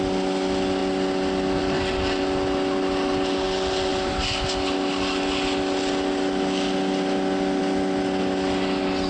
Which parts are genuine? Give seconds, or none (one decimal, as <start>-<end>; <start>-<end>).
0.0-9.1